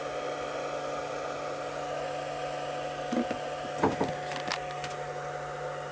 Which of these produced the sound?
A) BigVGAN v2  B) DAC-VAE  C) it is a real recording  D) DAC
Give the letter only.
C